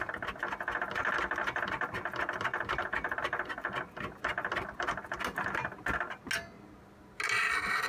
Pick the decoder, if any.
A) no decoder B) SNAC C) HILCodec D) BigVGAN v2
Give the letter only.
A